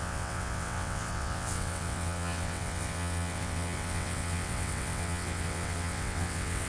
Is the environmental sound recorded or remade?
remade